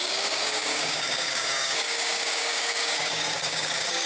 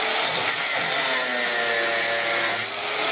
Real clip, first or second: second